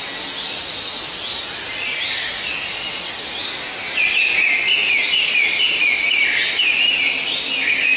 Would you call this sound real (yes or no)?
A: yes